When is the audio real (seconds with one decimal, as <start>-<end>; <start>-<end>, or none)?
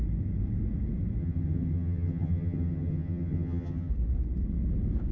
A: 0.0-1.2; 3.9-5.1